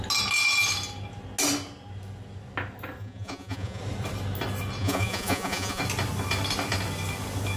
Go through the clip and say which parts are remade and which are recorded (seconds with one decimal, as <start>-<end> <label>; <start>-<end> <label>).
0.0-3.0 recorded; 3.0-3.8 remade; 3.8-4.8 recorded; 4.8-5.8 remade; 5.8-7.6 recorded